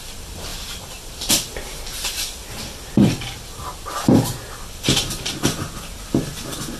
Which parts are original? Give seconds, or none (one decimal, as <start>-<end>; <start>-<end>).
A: 0.0-6.8